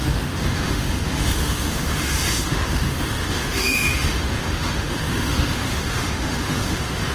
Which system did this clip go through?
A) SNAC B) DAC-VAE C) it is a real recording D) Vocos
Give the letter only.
B